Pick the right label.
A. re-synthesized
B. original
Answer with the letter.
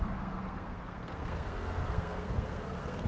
A